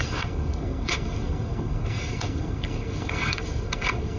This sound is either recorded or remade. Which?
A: remade